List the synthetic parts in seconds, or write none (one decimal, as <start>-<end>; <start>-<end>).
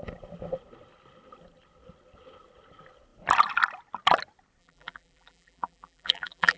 4.6-6.6